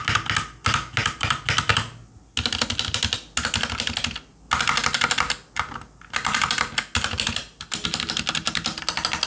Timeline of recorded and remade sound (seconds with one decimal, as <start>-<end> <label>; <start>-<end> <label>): 0.0-9.3 recorded

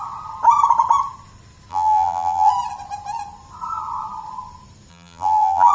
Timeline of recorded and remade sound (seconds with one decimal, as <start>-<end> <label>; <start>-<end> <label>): 0.0-1.7 recorded; 1.7-2.5 remade; 2.5-4.9 recorded; 4.9-5.7 remade

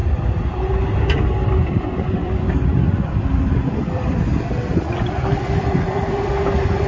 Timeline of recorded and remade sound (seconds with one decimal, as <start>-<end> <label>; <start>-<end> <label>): 0.0-1.8 remade; 1.8-2.2 recorded; 2.2-6.3 remade; 6.3-6.9 recorded

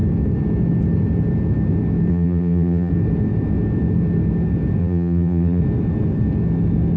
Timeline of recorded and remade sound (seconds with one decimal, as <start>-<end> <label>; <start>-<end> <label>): 0.0-2.1 recorded; 2.1-2.9 remade; 2.9-4.8 recorded; 4.8-5.6 remade; 5.6-7.0 recorded